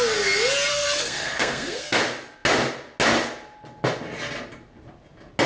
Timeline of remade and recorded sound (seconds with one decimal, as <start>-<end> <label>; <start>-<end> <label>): 0.0-0.7 recorded; 0.7-2.0 remade; 2.0-5.5 recorded